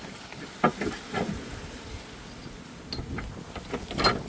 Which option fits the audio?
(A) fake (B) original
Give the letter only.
B